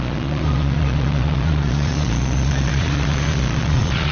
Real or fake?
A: fake